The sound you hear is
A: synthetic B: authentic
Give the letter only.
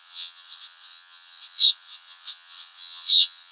A